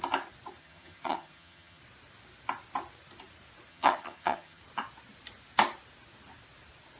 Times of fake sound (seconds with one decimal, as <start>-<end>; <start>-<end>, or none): 0.6-1.8; 3.7-4.6